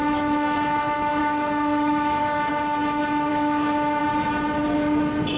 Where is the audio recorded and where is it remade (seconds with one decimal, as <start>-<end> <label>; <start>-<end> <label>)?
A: 0.0-1.2 recorded; 1.2-2.5 remade; 2.5-3.3 recorded; 3.3-4.0 remade; 4.0-5.4 recorded